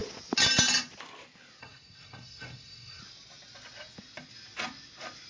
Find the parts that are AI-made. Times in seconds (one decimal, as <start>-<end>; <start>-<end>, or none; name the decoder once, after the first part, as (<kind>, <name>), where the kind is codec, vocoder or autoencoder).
1.6-3.0 (codec, SNAC)